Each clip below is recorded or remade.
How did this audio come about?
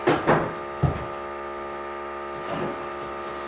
recorded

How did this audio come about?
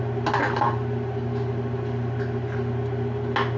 recorded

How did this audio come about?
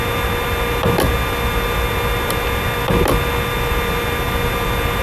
recorded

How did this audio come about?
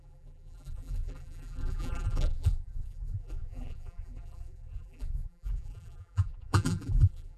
remade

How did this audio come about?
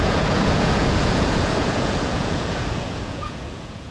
remade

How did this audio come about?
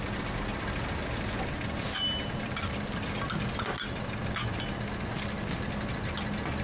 recorded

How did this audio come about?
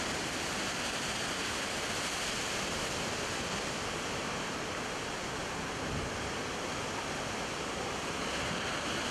recorded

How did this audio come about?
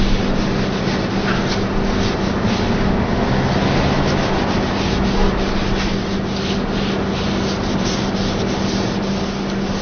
recorded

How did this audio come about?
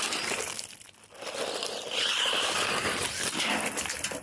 recorded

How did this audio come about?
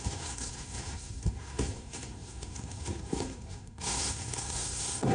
remade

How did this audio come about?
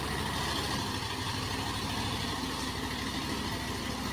recorded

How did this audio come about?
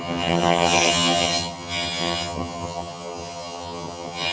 remade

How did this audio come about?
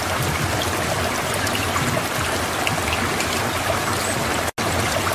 recorded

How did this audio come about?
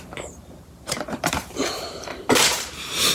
remade